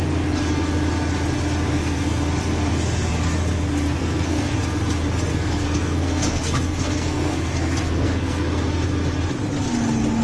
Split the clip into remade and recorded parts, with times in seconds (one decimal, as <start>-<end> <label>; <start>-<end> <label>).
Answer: 0.0-1.8 recorded; 1.8-2.3 remade; 2.3-4.0 recorded; 4.0-4.5 remade; 4.5-5.3 recorded; 5.3-8.9 remade; 8.9-10.2 recorded